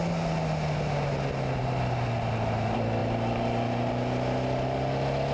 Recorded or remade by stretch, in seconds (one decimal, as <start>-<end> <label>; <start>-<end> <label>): 0.0-5.3 recorded